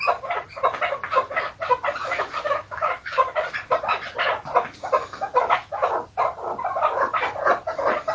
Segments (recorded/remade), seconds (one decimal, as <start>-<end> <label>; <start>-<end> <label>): 0.0-2.0 recorded; 2.0-3.4 remade; 3.4-5.0 recorded; 5.0-5.9 remade; 5.9-8.1 recorded